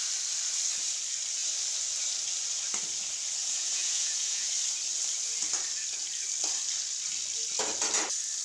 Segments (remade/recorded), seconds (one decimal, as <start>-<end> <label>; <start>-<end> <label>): 0.0-3.4 recorded; 3.4-4.5 remade; 4.5-8.4 recorded